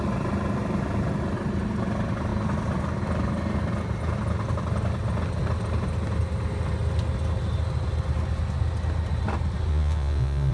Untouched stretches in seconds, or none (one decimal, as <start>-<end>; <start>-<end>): 0.0-9.7